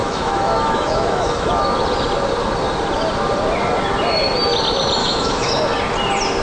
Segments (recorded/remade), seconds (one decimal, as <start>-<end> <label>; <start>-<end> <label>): 0.0-1.6 remade; 1.6-5.0 recorded; 5.0-5.5 remade; 5.5-6.4 recorded